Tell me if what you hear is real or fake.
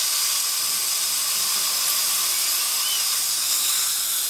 real